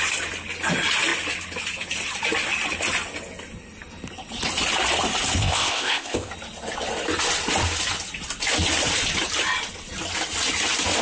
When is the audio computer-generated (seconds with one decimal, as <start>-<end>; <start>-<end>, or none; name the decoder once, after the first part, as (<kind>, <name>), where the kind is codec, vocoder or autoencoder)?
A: 5.4-6.3 (codec, ZipCodec)